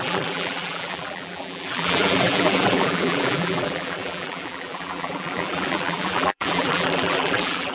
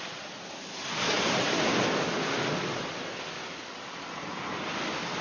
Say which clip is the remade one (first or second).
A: first